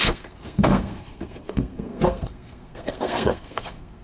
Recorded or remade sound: remade